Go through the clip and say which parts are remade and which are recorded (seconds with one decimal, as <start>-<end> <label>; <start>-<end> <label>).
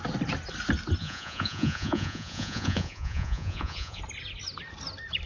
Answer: 0.0-1.0 recorded; 1.0-4.0 remade; 4.0-5.3 recorded